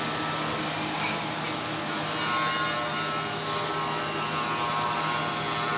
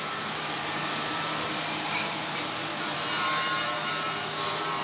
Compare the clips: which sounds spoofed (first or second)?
second